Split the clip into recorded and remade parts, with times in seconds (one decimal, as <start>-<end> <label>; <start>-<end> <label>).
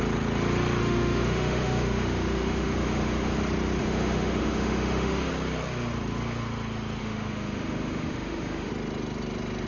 0.0-0.8 recorded; 0.8-3.4 remade; 3.4-3.8 recorded; 3.8-5.3 remade; 5.3-7.0 recorded; 7.0-8.7 remade; 8.7-9.7 recorded